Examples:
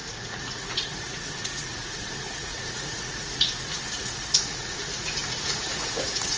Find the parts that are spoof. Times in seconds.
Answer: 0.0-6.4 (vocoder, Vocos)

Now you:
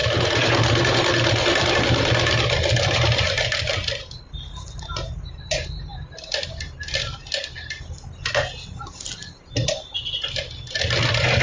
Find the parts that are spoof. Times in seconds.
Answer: none

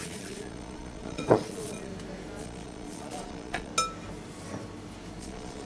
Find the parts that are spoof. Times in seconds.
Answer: 0.0-1.9 (vocoder, Vocos); 2.4-3.7; 5.2-5.7

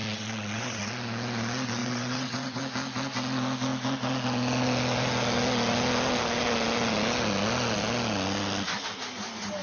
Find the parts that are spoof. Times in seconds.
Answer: 0.0-0.9 (vocoder, WaveNeXt); 1.8-2.6